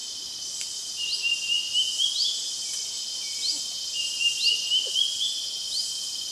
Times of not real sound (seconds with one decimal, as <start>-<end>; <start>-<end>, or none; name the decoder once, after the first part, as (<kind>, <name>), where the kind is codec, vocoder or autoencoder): none